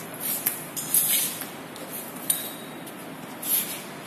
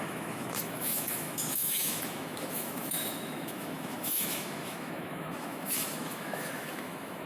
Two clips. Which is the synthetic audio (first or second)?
second